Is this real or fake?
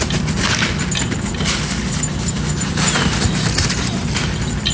real